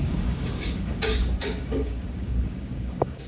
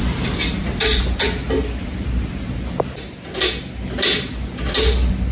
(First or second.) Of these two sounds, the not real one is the first